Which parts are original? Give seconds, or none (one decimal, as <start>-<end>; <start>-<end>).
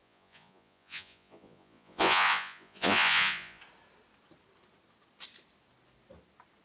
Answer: 3.6-6.6